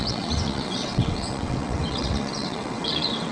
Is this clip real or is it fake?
fake